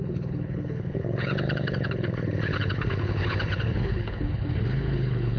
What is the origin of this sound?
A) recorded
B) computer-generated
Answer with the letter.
B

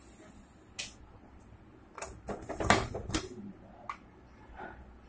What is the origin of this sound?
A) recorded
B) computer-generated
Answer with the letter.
A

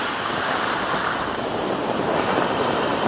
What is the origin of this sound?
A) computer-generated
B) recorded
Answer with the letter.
B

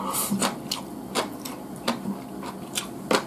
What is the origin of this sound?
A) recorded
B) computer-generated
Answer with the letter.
A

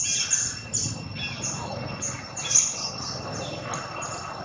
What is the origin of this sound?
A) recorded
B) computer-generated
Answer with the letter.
A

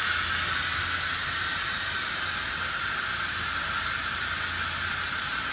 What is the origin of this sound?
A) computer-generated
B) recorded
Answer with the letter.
B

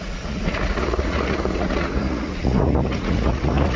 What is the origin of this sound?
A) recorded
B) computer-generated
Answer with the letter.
B